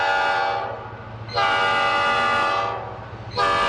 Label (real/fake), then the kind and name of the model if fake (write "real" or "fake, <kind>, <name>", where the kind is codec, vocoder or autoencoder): real